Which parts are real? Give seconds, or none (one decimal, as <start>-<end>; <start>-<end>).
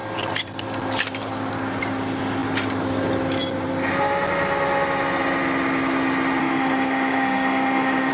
0.0-6.4